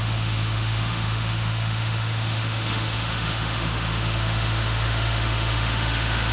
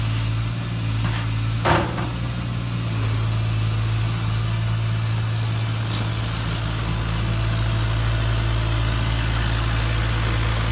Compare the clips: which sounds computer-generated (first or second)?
first